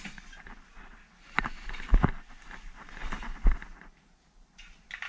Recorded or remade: recorded